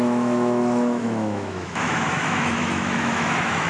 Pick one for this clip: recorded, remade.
remade